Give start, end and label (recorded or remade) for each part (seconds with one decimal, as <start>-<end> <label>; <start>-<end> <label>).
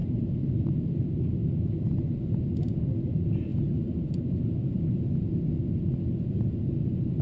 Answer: 0.0-7.2 recorded